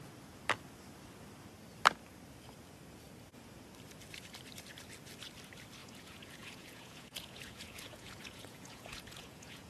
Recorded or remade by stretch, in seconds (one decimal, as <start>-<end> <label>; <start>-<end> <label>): 0.0-5.8 recorded; 5.8-9.7 remade